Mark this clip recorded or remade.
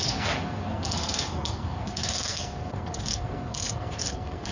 remade